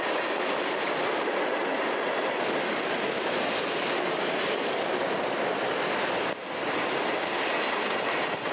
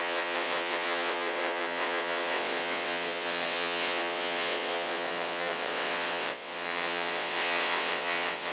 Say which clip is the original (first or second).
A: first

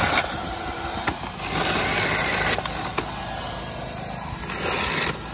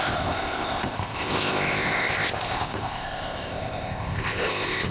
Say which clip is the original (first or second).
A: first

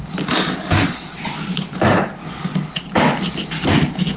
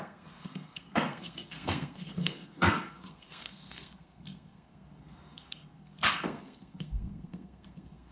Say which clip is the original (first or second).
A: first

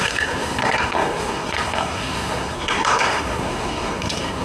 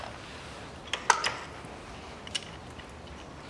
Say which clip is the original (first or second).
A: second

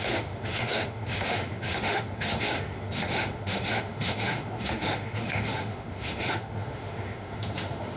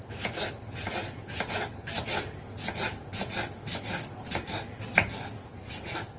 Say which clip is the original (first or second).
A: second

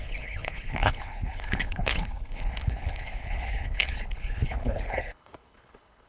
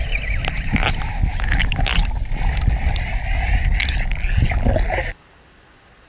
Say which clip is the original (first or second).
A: second